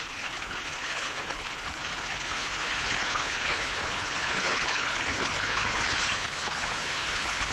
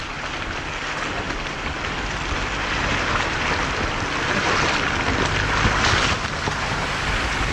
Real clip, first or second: second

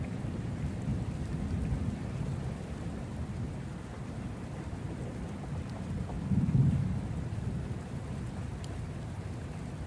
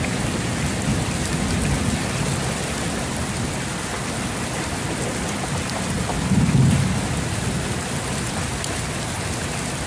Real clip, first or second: second